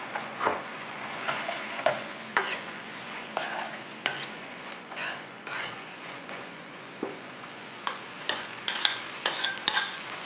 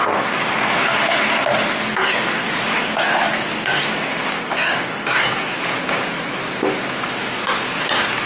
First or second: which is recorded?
second